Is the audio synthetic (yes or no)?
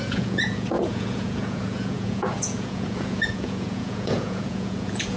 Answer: yes